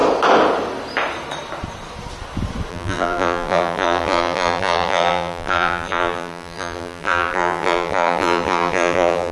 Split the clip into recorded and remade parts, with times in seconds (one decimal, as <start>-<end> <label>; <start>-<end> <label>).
0.0-2.7 recorded; 2.7-9.3 remade